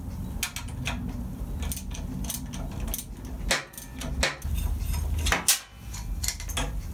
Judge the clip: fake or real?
real